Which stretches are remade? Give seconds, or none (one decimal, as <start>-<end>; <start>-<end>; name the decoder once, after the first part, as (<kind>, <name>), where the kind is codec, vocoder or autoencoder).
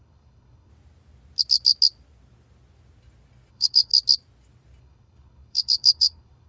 0.0-0.7 (codec, HILCodec); 3.5-3.9; 4.8-6.5